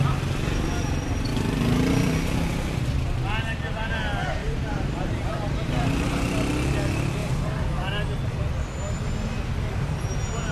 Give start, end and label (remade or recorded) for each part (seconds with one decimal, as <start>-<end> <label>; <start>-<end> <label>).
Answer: 0.0-4.4 recorded; 4.4-6.5 remade; 6.5-10.5 recorded